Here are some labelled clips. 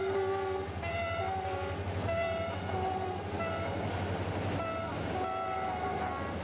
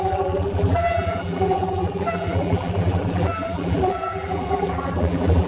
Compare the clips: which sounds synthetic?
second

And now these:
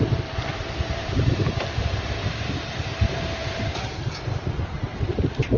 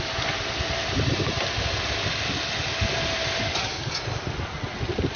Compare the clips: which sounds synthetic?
first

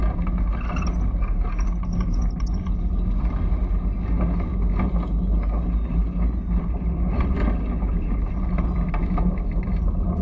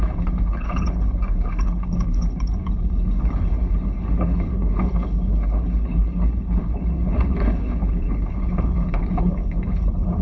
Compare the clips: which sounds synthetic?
second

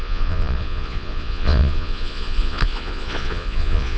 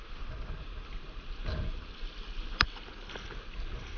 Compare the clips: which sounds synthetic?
first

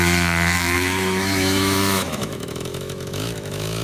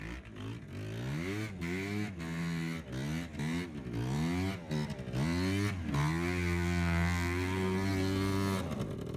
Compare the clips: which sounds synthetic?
first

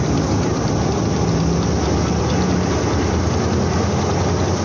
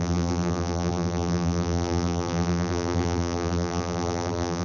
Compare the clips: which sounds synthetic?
second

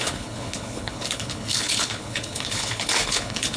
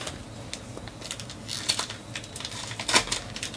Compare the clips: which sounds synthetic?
first